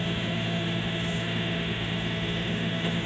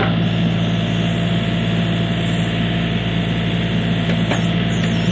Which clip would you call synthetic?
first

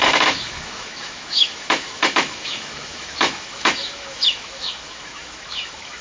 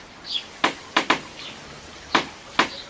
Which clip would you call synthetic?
first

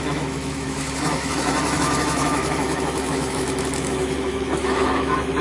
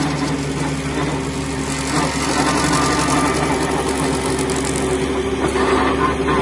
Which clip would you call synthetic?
first